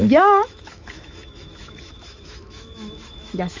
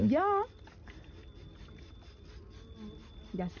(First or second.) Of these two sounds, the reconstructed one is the first